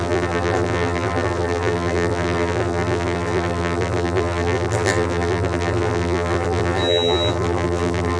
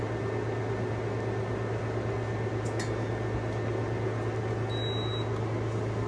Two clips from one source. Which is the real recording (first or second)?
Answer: second